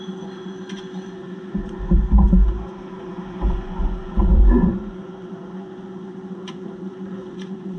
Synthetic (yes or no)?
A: yes